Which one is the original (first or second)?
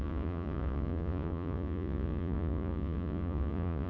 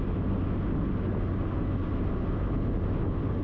second